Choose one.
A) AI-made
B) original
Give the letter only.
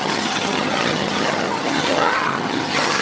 A